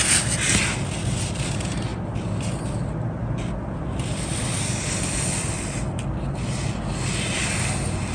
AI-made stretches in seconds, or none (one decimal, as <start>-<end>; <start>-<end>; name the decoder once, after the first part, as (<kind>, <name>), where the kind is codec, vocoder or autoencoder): none